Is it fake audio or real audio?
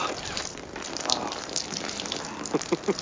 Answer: real